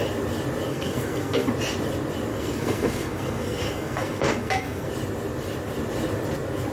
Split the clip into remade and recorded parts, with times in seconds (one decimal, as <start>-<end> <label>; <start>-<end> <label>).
0.0-0.7 recorded; 0.7-1.5 remade; 1.5-2.3 recorded; 2.3-4.9 remade; 4.9-6.7 recorded

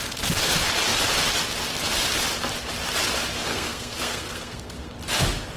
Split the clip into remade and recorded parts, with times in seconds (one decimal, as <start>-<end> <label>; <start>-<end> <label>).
0.0-3.5 recorded; 3.5-4.9 remade; 4.9-5.6 recorded

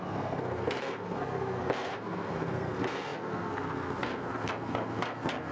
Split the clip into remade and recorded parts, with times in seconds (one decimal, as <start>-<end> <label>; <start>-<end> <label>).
0.0-5.5 remade

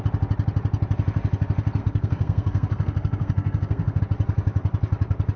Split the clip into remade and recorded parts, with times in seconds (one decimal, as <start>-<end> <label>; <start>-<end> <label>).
0.0-1.8 recorded; 1.8-4.0 remade; 4.0-5.4 recorded

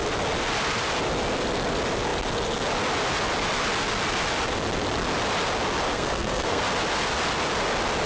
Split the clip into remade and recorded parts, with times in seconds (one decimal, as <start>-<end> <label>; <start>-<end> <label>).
0.0-5.9 recorded; 5.9-6.6 remade; 6.6-8.1 recorded

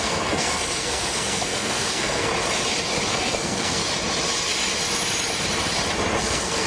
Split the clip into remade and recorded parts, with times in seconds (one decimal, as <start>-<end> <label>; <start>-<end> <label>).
0.0-2.3 remade; 2.3-3.1 recorded; 3.1-3.8 remade; 3.8-6.2 recorded; 6.2-6.7 remade

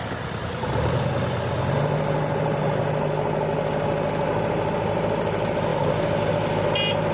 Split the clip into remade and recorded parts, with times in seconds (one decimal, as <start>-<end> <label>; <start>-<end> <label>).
0.0-7.1 recorded